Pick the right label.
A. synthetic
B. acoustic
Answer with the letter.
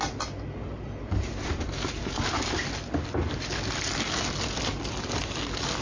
B